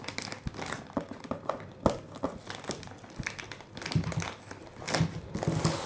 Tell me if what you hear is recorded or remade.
recorded